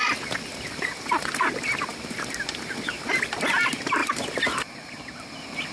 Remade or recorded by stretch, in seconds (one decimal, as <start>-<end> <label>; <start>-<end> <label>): 0.0-5.7 recorded